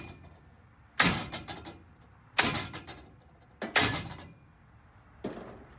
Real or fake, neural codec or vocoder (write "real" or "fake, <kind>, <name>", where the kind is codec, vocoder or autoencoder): real